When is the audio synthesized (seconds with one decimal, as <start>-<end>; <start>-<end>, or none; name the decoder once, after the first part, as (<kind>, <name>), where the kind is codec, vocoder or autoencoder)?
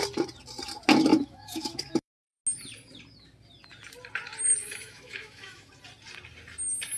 1.1-2.4 (autoencoder, DAC-VAE); 4.6-5.7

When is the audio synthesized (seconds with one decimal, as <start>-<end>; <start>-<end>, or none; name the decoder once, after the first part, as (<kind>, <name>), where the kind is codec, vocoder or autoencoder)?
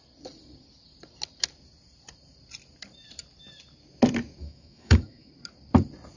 4.4-5.3 (autoencoder, DAC-VAE)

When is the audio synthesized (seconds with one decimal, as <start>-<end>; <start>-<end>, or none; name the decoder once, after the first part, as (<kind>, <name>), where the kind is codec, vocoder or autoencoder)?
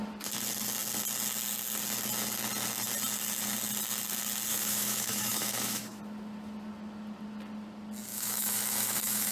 4.5-6.0 (autoencoder, DAC-VAE); 8.1-9.3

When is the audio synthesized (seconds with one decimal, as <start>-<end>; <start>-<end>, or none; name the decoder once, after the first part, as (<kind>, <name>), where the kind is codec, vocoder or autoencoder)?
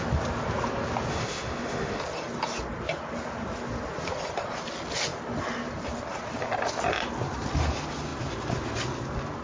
1.1-2.0 (autoencoder, DAC-VAE)